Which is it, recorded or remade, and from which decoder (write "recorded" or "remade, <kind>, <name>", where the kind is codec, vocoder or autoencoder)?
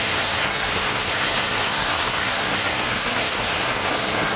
remade, codec, SNAC